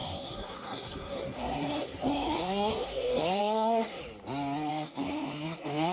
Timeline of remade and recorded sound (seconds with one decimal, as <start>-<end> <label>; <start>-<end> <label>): 0.0-4.0 remade; 4.0-4.7 recorded; 4.7-5.9 remade